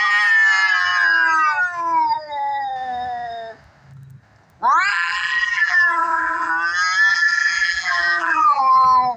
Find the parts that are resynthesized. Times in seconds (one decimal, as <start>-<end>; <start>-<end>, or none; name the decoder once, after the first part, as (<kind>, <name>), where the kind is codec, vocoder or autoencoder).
4.9-6.5 (vocoder, BigVGAN v2); 7.1-8.6